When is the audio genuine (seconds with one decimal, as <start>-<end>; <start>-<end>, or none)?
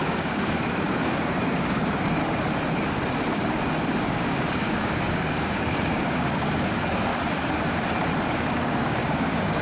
2.2-4.0; 7.1-8.3